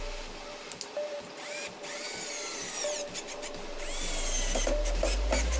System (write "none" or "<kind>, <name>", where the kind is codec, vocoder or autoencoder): none